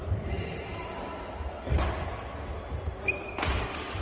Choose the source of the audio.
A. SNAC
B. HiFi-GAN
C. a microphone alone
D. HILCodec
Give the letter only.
C